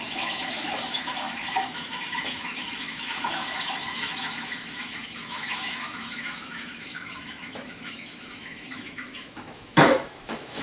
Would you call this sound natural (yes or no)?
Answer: no